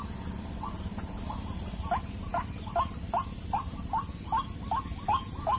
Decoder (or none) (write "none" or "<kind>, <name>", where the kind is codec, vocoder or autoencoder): none